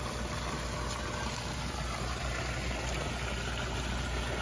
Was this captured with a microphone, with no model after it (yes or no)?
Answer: yes